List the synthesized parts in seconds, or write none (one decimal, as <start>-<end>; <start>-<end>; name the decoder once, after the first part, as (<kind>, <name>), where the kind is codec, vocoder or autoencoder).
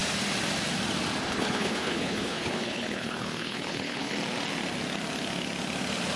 1.2-4.1 (codec, HILCodec)